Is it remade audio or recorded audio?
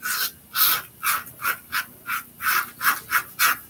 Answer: recorded